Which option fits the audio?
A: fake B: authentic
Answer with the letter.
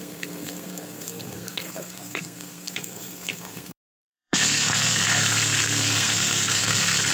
A